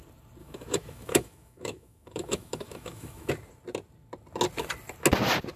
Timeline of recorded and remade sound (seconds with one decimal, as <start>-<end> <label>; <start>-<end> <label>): 0.0-0.4 recorded; 0.4-3.3 remade; 3.3-5.6 recorded